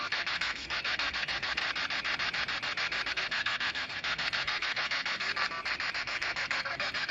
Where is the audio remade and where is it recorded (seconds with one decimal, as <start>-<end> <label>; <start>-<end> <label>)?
0.0-1.6 remade; 1.6-3.1 recorded; 3.1-5.3 remade; 5.3-6.0 recorded; 6.0-7.1 remade